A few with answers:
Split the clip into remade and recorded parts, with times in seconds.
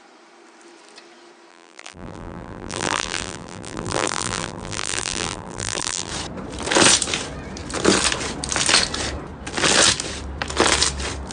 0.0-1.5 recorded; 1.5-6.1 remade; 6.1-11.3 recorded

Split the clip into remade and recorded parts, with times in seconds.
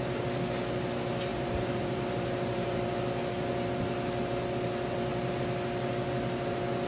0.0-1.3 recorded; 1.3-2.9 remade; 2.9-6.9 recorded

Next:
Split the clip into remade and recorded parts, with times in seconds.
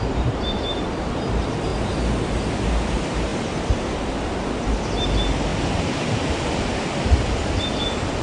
0.0-1.7 remade; 1.7-2.8 recorded; 2.8-3.3 remade; 3.3-4.9 recorded; 4.9-5.5 remade; 5.5-8.2 recorded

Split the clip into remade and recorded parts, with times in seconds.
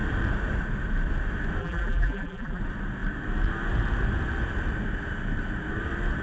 0.0-1.6 recorded; 1.6-2.6 remade; 2.6-6.2 recorded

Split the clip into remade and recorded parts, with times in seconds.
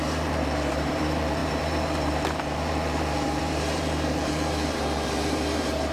0.0-5.9 remade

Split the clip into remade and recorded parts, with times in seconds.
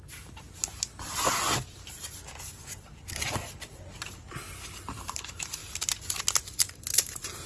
0.0-0.6 remade; 0.6-4.9 recorded; 4.9-5.6 remade; 5.6-6.6 recorded; 6.6-7.5 remade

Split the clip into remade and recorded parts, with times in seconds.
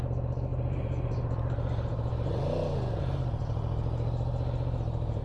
0.0-0.5 recorded; 0.5-2.3 remade; 2.3-5.2 recorded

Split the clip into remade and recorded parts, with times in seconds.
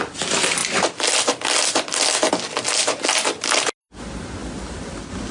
0.0-4.4 recorded; 4.4-5.3 remade